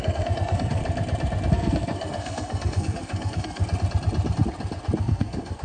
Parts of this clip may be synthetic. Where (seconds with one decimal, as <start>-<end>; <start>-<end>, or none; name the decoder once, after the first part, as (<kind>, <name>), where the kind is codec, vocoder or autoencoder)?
0.0-0.8 (codec, SNAC); 1.5-3.6; 5.0-5.6